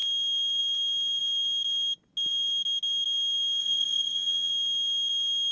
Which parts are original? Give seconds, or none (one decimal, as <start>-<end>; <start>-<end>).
0.0-3.6; 4.5-5.5